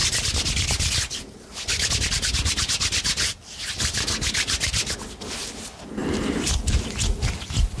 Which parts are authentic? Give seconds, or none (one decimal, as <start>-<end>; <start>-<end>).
0.0-7.8